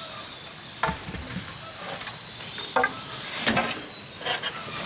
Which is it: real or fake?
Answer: real